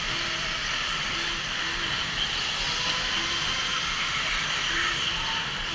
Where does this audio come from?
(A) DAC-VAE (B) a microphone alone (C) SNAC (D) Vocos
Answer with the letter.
B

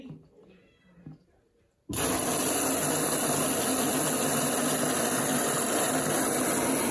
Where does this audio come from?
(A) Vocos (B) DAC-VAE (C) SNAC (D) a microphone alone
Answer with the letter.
D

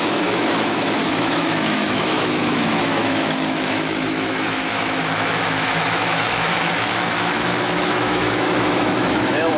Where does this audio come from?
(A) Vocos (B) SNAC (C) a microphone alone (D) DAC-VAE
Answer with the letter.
D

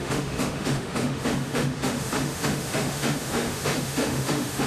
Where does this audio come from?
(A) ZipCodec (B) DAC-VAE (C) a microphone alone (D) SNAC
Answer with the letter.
B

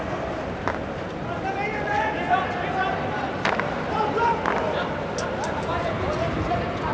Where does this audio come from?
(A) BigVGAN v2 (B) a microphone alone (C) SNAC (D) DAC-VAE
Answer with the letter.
B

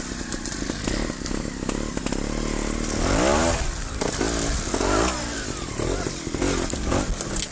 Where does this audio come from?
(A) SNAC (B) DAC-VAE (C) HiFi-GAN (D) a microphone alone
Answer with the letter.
D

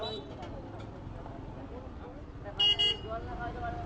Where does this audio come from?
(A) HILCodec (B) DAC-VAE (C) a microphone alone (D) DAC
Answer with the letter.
C